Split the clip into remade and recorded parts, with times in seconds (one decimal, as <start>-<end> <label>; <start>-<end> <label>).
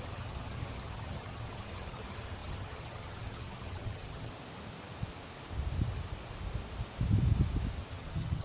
0.0-4.3 remade; 4.3-7.9 recorded; 7.9-8.4 remade